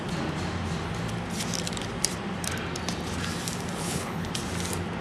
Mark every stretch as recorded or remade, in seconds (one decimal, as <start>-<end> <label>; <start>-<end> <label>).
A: 0.0-3.8 recorded; 3.8-4.3 remade; 4.3-5.0 recorded